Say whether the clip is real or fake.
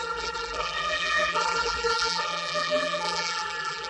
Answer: fake